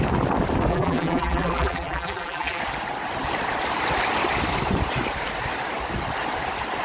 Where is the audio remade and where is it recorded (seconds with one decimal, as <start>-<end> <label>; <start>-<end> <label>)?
0.0-0.7 recorded; 0.7-2.6 remade; 2.6-6.8 recorded